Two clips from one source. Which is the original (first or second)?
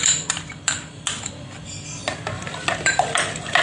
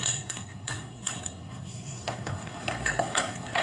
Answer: first